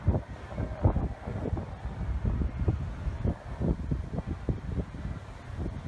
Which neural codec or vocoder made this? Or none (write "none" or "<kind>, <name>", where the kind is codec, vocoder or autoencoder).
none